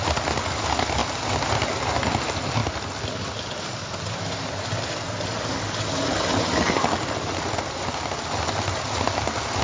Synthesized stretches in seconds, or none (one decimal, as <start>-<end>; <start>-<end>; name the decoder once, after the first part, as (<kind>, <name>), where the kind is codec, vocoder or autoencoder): none